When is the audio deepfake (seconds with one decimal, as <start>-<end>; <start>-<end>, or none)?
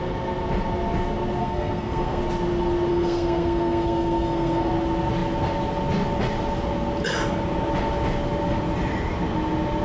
1.4-2.2; 2.9-4.7